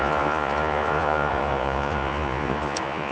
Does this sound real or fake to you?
fake